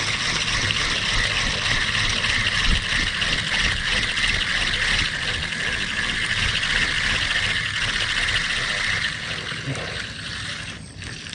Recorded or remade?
recorded